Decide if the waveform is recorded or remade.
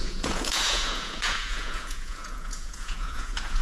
remade